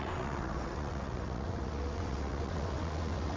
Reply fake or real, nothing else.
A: fake